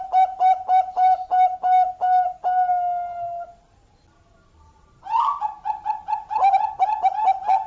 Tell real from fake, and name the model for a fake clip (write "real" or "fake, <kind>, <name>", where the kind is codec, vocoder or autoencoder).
real